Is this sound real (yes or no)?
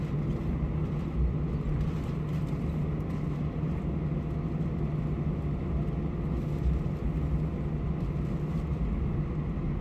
yes